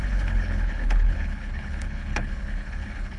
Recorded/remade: remade